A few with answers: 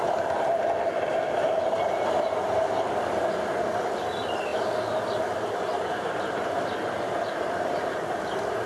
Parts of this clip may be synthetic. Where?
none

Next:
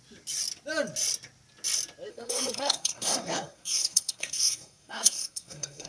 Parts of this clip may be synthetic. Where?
2.1-5.9